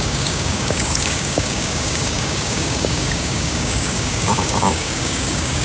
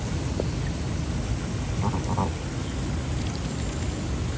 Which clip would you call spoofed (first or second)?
first